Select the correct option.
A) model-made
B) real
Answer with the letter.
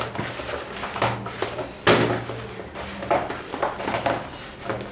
B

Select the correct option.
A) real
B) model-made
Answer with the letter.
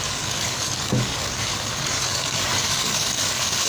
B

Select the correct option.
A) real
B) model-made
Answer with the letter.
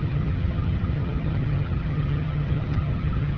B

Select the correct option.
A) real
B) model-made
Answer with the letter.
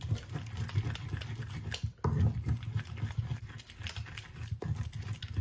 A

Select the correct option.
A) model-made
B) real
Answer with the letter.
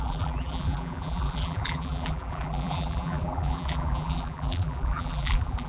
A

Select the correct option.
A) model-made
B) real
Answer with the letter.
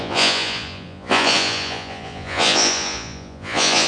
A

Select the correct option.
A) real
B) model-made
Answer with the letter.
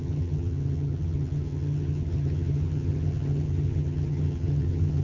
B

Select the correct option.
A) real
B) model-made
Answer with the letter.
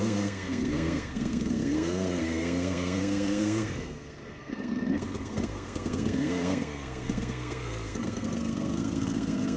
B